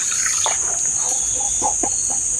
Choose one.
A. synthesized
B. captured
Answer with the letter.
B